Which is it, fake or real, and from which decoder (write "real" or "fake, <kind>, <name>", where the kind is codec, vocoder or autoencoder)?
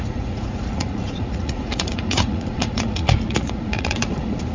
fake, vocoder, Vocos